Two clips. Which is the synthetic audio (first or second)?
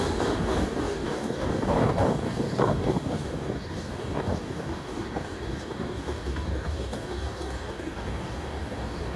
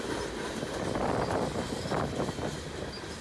first